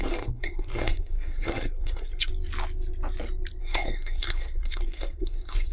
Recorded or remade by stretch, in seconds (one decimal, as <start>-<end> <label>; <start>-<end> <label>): 0.0-2.3 remade; 2.3-3.6 recorded; 3.6-5.7 remade